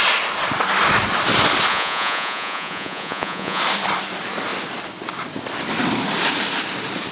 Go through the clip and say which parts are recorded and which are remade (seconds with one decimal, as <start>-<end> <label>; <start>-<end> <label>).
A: 0.0-1.7 recorded; 1.7-3.6 remade; 3.6-7.1 recorded